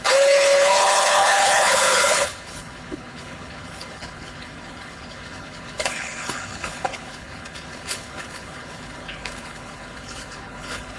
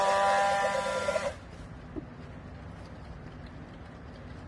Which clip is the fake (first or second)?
first